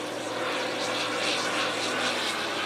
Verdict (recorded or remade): recorded